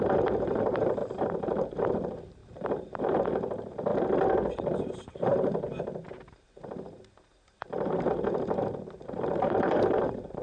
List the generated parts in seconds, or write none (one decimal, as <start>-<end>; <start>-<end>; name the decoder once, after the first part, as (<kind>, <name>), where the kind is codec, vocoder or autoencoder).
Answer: 0.0-3.9 (vocoder, BigVGAN v2); 4.5-10.4